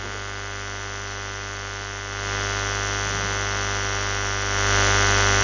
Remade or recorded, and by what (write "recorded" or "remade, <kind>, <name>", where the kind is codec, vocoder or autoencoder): recorded